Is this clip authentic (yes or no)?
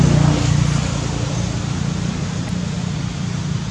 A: yes